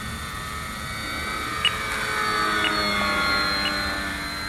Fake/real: real